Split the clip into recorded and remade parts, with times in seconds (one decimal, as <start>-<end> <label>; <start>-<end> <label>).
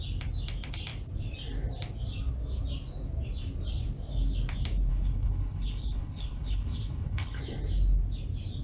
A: 0.0-4.9 recorded; 4.9-7.4 remade; 7.4-8.6 recorded